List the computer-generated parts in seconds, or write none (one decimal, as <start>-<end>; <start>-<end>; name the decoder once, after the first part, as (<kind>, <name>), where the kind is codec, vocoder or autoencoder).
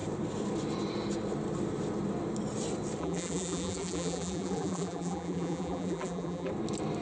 3.0-6.5 (vocoder, BigVGAN v2)